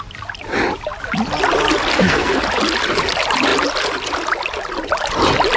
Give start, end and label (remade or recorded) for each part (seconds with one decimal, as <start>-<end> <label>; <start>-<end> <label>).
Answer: 0.0-1.9 recorded; 1.9-2.4 remade; 2.4-5.6 recorded